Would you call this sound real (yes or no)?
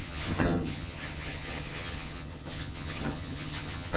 no